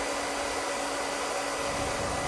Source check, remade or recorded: recorded